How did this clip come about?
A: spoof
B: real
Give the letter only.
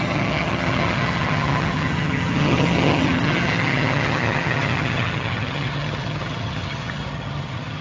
A